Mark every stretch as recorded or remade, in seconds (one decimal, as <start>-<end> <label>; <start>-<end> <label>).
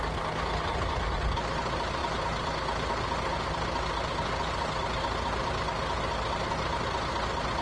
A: 0.0-7.6 recorded